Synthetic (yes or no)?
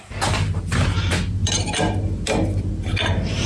no